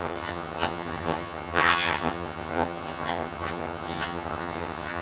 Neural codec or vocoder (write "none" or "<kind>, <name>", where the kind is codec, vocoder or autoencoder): vocoder, HiFi-GAN